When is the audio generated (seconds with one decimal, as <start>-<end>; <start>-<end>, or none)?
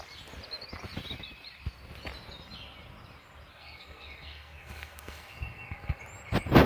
3.5-6.0